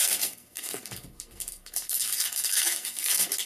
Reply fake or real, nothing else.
fake